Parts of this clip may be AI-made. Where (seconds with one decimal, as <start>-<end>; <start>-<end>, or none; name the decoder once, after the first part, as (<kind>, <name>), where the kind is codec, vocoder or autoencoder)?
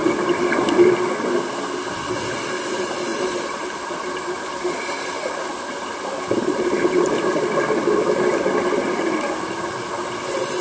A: 3.1-7.1 (vocoder, BigVGAN v2)